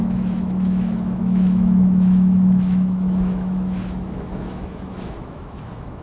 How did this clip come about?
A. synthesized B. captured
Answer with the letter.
A